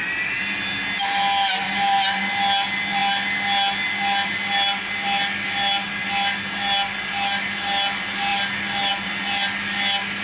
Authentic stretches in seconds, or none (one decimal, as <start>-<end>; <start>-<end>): 0.0-10.2

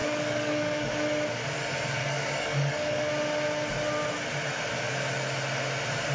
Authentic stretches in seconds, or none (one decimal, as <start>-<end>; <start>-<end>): 0.9-2.0; 3.1-6.1

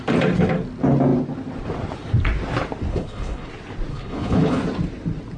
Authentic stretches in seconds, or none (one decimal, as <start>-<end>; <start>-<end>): 0.0-2.9; 3.5-3.9; 4.6-5.4

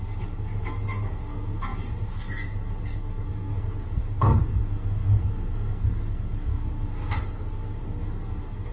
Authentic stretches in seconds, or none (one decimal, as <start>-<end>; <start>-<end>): none